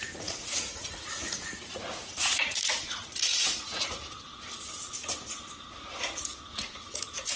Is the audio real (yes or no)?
no